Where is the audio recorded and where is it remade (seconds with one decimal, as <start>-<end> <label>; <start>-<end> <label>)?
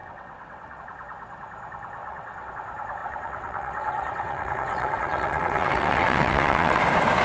0.0-0.8 remade; 0.8-2.0 recorded; 2.0-2.5 remade; 2.5-3.0 recorded; 3.0-6.8 remade; 6.8-7.2 recorded